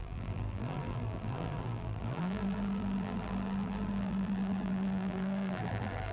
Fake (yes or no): yes